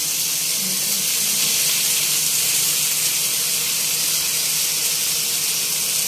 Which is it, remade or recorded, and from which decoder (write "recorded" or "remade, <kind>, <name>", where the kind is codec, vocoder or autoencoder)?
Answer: recorded